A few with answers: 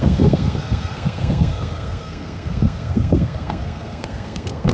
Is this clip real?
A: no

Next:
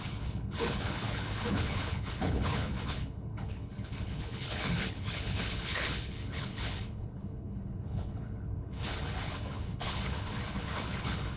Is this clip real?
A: no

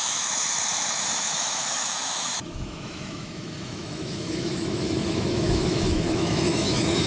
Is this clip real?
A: no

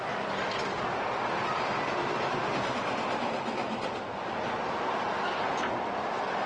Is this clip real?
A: yes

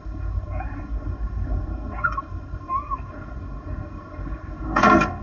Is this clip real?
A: no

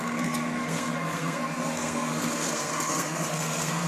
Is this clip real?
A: no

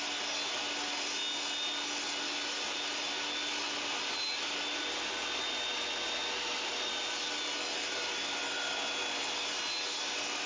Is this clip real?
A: yes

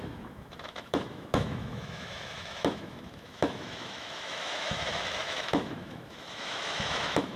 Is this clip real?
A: no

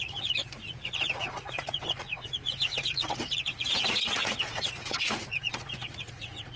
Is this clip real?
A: no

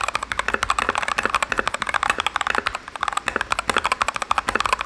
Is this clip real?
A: yes